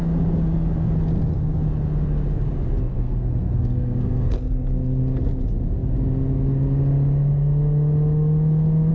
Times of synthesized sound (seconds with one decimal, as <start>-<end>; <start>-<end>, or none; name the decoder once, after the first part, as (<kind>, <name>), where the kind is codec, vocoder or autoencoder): 2.9-4.3 (codec, SNAC)